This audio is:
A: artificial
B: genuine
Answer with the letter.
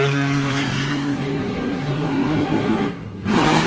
A